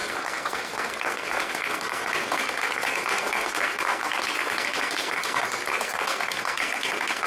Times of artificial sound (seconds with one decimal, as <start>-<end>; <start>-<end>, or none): 0.0-7.3